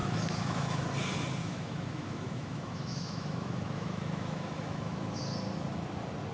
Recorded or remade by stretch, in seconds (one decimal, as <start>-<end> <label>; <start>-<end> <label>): 0.0-0.8 remade; 0.8-1.4 recorded; 1.4-5.2 remade; 5.2-6.3 recorded